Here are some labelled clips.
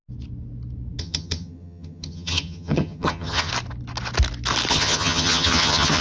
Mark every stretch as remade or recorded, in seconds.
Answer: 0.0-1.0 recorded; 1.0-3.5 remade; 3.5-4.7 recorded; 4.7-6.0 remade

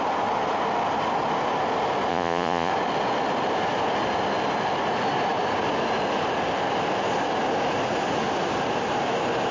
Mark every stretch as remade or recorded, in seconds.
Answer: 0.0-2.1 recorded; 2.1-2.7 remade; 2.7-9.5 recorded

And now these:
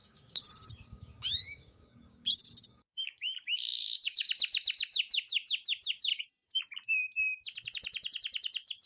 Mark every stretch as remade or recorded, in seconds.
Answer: 0.0-4.3 remade; 4.3-6.1 recorded; 6.1-6.6 remade; 6.6-8.9 recorded

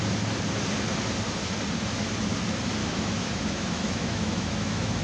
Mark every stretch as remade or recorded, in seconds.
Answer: 0.0-2.8 recorded; 2.8-5.0 remade

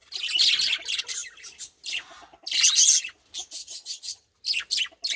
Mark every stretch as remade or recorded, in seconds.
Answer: 0.0-3.6 recorded; 3.6-4.3 remade; 4.3-5.2 recorded

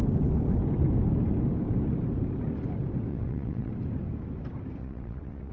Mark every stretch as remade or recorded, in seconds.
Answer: 0.0-3.1 recorded; 3.1-3.7 remade; 3.7-4.8 recorded; 4.8-5.5 remade